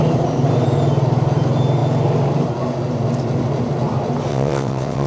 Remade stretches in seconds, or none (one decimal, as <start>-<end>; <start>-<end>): 4.3-5.1

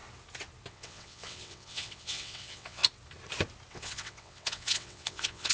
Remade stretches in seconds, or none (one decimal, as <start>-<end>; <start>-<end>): 0.7-2.8; 3.7-5.5